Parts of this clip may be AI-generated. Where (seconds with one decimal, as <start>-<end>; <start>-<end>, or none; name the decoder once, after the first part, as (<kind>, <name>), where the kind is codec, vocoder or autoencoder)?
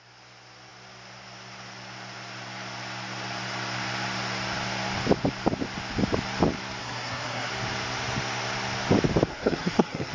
6.8-7.5 (codec, SNAC); 9.3-10.1